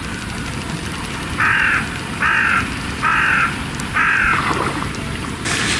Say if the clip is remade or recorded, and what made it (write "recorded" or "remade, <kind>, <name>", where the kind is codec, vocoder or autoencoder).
recorded